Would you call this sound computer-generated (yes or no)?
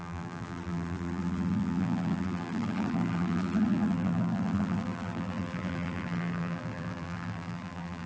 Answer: yes